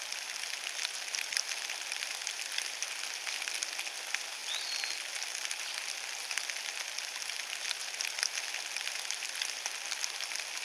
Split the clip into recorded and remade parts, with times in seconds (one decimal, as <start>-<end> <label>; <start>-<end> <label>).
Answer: 0.0-10.6 recorded